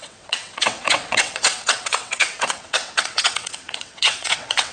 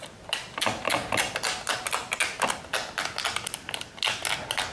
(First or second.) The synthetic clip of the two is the first